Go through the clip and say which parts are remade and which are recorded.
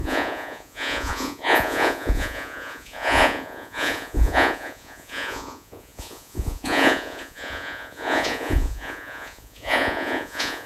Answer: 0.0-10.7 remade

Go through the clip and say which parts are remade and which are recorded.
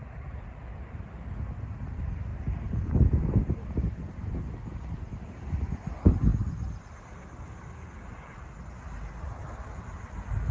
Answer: 0.0-0.6 remade; 0.6-10.5 recorded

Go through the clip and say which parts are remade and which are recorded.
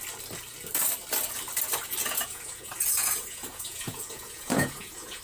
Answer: 0.0-2.0 recorded; 2.0-5.2 remade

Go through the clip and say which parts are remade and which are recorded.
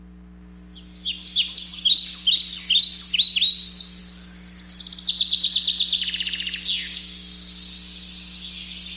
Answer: 0.0-9.0 recorded